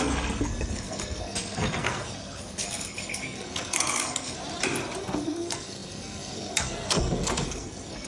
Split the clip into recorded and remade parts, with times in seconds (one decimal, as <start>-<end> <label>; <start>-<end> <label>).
0.0-4.4 remade; 4.4-5.0 recorded; 5.0-8.1 remade